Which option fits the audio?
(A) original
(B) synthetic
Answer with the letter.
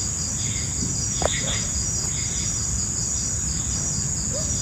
A